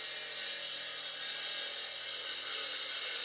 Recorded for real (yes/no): yes